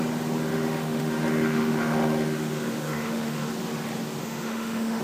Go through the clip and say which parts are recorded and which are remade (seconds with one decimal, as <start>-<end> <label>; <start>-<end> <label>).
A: 0.0-0.5 recorded; 0.5-3.5 remade; 3.5-4.2 recorded; 4.2-5.0 remade

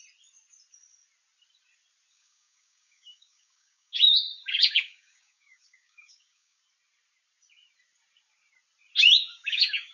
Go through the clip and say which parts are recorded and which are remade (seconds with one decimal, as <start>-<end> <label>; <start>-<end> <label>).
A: 0.0-2.1 recorded; 2.1-6.6 remade; 6.6-9.3 recorded; 9.3-9.9 remade

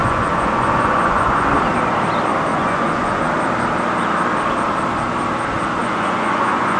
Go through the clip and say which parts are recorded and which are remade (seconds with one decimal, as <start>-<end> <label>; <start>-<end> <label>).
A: 0.0-1.5 remade; 1.5-2.5 recorded; 2.5-3.2 remade; 3.2-5.8 recorded; 5.8-6.8 remade

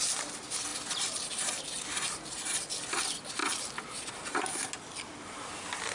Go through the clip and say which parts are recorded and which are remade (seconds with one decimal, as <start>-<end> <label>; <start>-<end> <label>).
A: 0.0-5.9 recorded

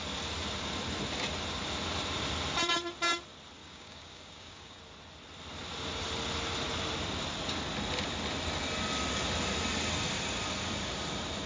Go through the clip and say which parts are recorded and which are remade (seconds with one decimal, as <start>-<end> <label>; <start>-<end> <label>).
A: 0.0-3.6 recorded; 3.6-4.8 remade; 4.8-11.5 recorded